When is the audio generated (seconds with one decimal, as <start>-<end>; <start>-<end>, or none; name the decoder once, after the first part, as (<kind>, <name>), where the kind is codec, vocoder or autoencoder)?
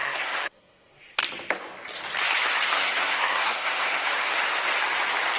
0.0-1.2 (codec, SNAC); 2.7-4.1